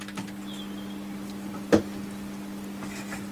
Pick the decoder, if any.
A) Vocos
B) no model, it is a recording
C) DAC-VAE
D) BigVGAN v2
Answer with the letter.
B